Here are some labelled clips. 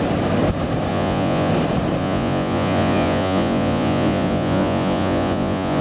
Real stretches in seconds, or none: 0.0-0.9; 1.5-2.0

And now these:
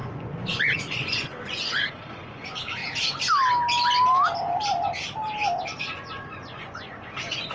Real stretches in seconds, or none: 2.8-5.8

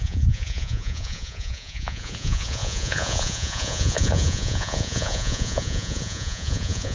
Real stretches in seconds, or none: none